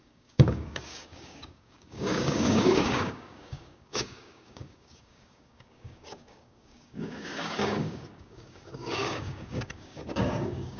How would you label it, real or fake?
fake